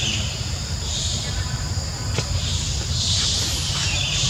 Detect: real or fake fake